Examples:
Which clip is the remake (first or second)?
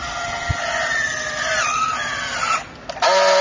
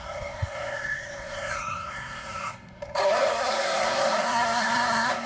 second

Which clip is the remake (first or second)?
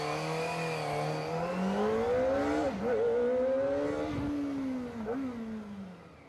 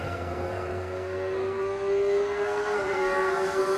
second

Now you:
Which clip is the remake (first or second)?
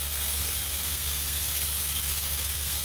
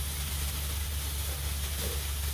first